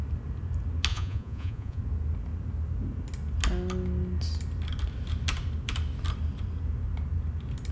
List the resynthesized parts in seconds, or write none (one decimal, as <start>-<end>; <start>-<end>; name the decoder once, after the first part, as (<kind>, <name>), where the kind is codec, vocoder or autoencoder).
0.9-1.8 (vocoder, Vocos)